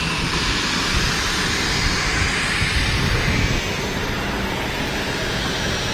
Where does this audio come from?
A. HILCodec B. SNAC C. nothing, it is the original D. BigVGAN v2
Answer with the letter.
C